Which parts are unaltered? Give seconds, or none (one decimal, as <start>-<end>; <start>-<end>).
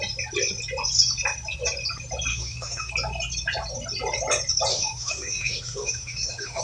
0.0-2.3; 2.9-4.7